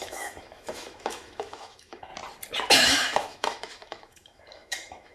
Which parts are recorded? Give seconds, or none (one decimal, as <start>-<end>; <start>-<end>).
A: 2.1-2.7